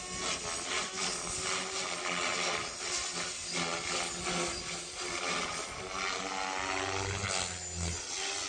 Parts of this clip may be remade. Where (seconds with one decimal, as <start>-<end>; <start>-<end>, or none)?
none